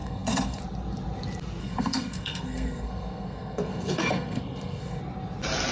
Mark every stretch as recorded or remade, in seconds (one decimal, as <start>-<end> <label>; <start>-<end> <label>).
0.0-0.6 remade; 0.6-1.6 recorded; 1.6-5.0 remade; 5.0-5.7 recorded